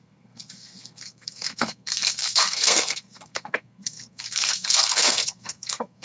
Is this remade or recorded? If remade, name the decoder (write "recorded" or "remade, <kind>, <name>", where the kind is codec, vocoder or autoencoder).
remade, codec, SNAC